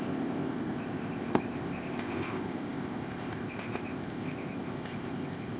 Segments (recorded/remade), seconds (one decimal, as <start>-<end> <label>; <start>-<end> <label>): 0.0-5.6 remade